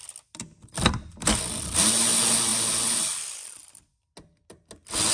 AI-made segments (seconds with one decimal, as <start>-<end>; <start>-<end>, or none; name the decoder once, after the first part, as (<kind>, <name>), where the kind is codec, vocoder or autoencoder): none